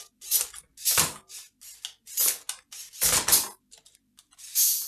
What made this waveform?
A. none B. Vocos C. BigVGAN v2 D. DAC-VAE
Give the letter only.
A